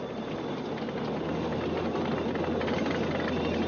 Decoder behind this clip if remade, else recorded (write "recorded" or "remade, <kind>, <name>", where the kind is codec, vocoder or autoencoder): recorded